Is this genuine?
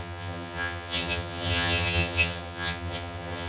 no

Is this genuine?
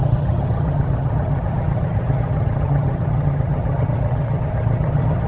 no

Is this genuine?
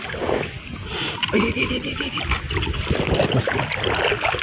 yes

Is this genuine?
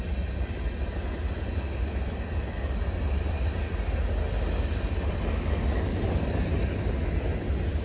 yes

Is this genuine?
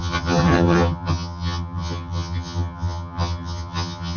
no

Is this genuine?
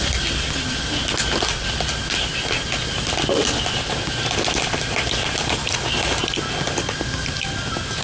yes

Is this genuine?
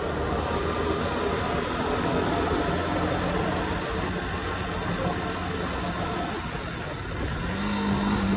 yes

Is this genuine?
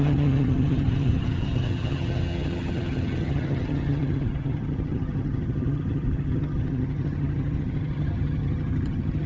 no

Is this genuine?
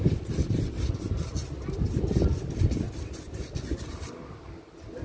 yes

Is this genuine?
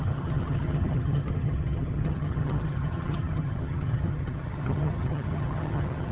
no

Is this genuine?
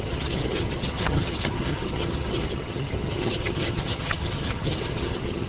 no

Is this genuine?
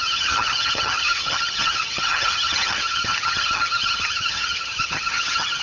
no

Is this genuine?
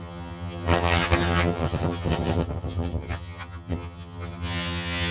no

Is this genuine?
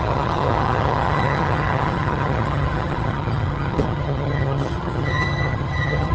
no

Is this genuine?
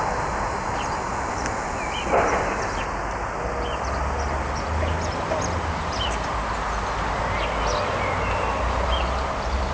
yes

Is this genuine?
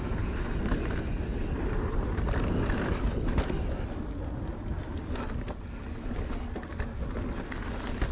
yes